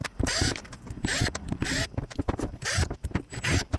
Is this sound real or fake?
fake